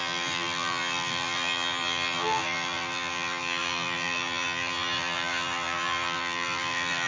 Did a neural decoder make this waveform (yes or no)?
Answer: yes